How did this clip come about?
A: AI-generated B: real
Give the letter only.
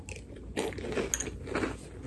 B